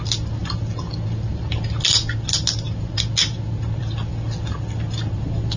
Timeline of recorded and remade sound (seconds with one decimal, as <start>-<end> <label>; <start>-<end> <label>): 0.0-5.6 recorded